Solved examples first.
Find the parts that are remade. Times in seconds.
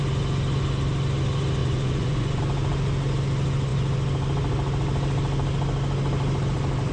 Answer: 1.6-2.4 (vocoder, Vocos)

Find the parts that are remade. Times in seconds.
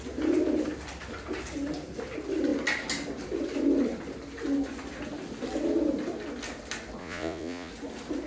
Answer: 7.0-7.7 (vocoder, Vocos)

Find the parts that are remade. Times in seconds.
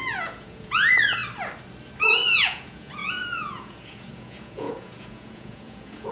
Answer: 0.0-1.2 (vocoder, Vocos); 2.0-6.1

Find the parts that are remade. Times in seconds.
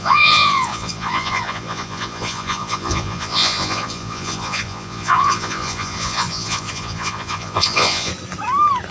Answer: 0.0-8.1 (vocoder, Vocos)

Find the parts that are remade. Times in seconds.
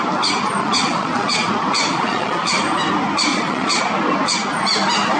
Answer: 0.6-1.5 (vocoder, Vocos); 1.9-2.4; 3.3-3.8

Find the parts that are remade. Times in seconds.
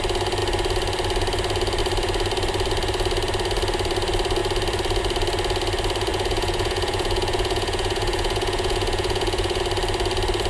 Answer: 6.1-9.6 (vocoder, Vocos)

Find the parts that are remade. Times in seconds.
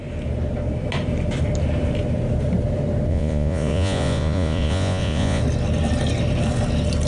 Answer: 3.1-5.4 (vocoder, Vocos)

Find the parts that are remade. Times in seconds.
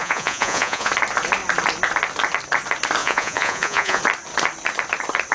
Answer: 0.0-0.9 (vocoder, Vocos); 3.0-4.0